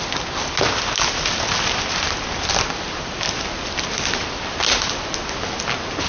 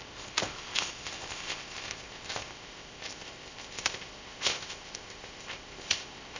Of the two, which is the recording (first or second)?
first